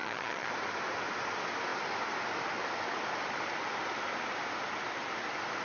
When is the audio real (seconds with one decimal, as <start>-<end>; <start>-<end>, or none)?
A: 0.5-5.6